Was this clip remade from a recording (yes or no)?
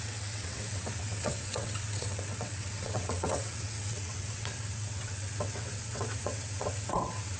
yes